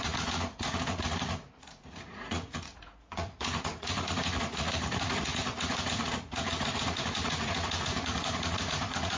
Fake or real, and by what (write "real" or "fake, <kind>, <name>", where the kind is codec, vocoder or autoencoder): fake, vocoder, Vocos